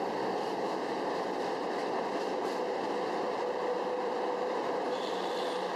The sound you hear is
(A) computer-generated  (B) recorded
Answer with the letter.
B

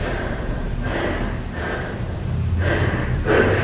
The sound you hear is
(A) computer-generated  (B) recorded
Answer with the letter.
A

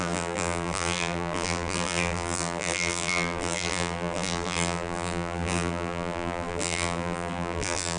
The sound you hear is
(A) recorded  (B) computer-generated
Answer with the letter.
B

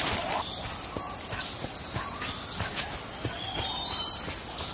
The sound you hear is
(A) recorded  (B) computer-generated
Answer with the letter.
A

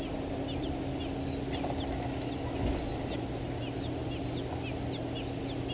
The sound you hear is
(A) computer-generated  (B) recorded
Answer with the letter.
B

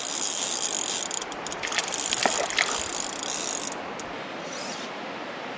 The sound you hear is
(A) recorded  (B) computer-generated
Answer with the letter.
A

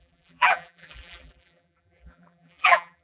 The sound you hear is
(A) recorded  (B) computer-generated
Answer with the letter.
B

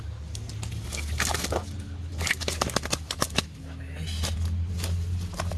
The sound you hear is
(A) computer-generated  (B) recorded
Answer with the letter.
B